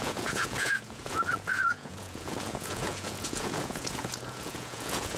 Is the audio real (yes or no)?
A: no